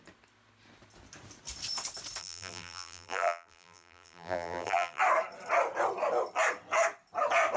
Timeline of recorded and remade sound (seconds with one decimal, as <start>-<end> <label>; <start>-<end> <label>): 0.0-2.2 recorded; 2.2-5.0 remade; 5.0-7.6 recorded